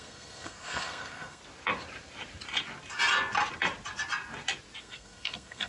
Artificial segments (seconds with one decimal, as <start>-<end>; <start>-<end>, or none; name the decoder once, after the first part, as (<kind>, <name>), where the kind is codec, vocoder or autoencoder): 0.0-1.4 (codec, SNAC); 4.8-5.7